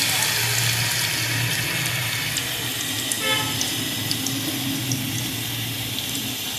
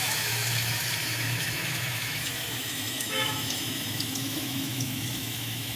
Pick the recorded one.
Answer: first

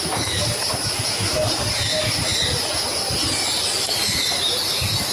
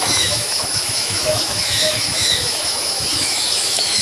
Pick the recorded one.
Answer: first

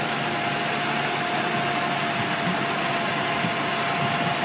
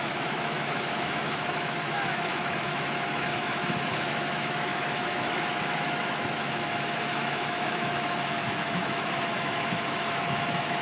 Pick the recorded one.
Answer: first